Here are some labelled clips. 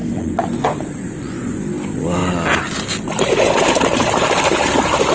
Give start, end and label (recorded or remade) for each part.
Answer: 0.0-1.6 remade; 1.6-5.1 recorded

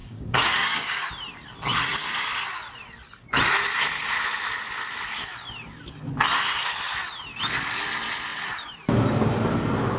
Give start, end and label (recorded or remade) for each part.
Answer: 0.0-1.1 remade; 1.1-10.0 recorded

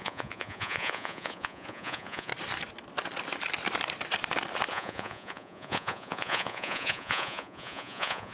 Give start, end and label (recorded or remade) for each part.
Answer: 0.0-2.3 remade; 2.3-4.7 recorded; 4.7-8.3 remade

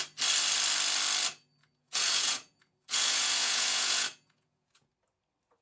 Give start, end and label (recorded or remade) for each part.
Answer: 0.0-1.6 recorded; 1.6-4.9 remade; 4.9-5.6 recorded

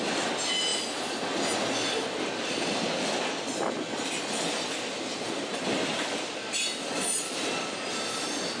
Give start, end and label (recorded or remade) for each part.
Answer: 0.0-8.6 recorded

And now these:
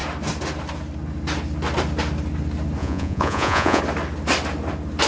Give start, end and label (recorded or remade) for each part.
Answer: 0.0-2.8 recorded; 2.8-3.8 remade; 3.8-5.1 recorded

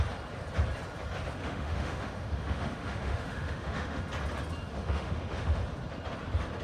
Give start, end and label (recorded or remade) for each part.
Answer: 0.0-1.4 recorded; 1.4-4.0 remade; 4.0-4.7 recorded; 4.7-5.6 remade; 5.6-6.6 recorded